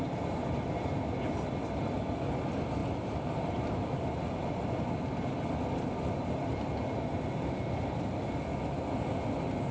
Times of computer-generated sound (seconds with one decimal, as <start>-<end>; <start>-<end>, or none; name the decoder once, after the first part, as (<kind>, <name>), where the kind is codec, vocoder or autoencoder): 2.8-5.1 (vocoder, BigVGAN v2)